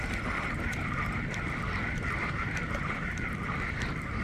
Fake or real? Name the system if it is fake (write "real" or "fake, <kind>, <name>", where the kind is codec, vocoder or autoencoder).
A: fake, vocoder, BigVGAN v2